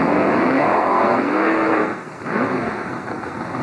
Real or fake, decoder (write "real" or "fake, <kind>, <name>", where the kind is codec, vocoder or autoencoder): fake, codec, SNAC